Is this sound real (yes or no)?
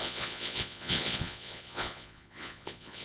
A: no